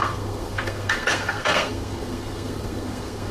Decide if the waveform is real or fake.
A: fake